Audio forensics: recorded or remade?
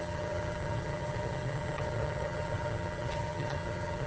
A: remade